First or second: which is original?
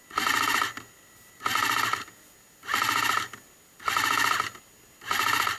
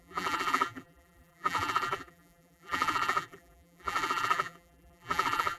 first